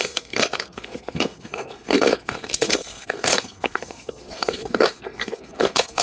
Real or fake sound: fake